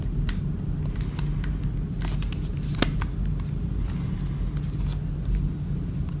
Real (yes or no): yes